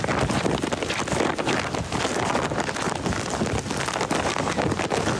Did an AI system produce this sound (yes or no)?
no